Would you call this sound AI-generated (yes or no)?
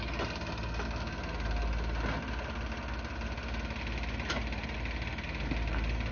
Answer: no